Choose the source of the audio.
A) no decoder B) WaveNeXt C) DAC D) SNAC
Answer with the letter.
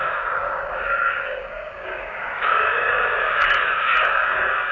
C